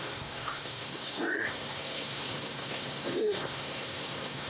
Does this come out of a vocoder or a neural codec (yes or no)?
yes